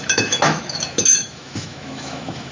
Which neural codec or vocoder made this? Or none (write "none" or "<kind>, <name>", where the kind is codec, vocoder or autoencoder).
autoencoder, DAC-VAE